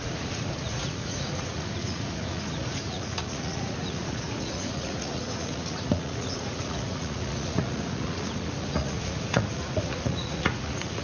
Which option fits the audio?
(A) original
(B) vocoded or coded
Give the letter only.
B